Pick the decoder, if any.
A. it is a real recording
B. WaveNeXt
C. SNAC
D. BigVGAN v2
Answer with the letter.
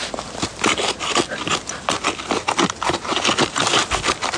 A